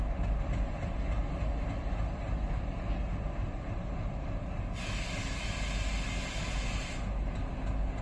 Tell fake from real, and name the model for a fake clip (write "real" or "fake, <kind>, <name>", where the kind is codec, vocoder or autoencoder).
real